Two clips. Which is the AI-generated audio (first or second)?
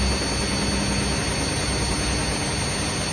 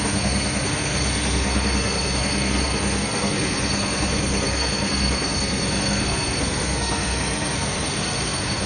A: second